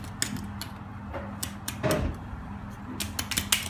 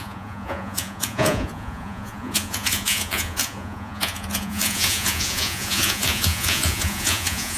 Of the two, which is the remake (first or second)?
second